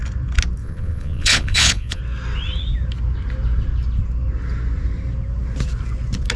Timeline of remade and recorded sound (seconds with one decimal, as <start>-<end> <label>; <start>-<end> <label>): 0.0-0.6 recorded; 0.6-2.0 remade; 2.0-6.4 recorded